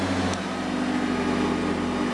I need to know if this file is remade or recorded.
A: recorded